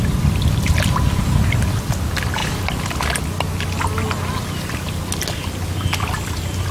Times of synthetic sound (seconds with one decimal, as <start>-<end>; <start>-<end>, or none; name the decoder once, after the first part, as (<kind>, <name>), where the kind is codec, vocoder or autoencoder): none